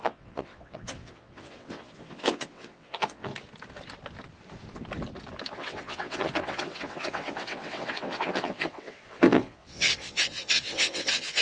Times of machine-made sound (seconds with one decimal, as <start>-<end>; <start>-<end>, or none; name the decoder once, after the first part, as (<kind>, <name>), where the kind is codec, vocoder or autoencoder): 0.0-3.3 (vocoder, WaveNeXt); 5.5-11.4